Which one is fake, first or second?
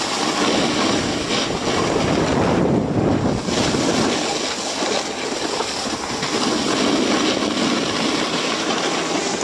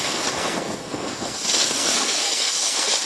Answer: second